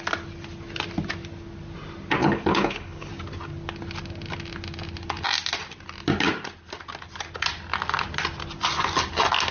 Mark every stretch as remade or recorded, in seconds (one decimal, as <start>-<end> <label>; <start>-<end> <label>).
0.0-2.2 recorded; 2.2-3.1 remade; 3.1-9.5 recorded